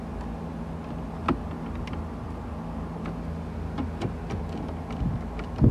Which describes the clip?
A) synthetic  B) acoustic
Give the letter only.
B